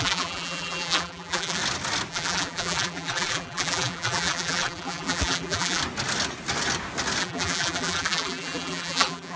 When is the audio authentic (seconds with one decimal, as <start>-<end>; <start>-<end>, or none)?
1.6-2.1; 5.8-7.2